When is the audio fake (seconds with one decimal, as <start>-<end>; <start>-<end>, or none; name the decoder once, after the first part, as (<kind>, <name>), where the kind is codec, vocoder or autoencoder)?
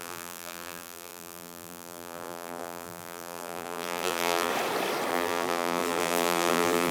0.0-4.5 (vocoder, BigVGAN v2); 5.1-6.9